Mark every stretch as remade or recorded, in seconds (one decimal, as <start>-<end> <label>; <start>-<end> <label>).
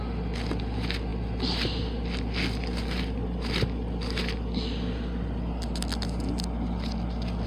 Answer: 0.0-7.5 recorded